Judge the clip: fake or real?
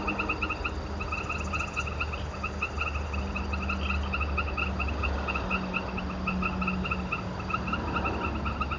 real